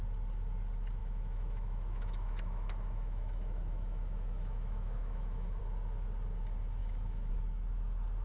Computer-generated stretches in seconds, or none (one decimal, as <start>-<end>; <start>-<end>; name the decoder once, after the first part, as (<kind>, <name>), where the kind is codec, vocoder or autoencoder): 1.0-5.6 (autoencoder, DAC-VAE); 6.8-7.3